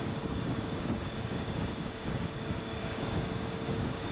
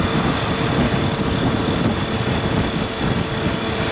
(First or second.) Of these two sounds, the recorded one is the second